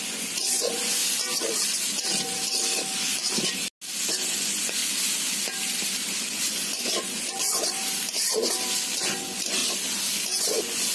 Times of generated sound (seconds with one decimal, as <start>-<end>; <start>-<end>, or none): 0.0-1.0; 4.1-4.8; 6.3-7.8; 9.0-9.6; 10.2-10.9